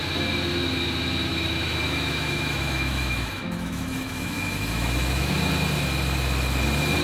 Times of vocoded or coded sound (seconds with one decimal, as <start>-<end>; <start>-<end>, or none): 1.3-5.5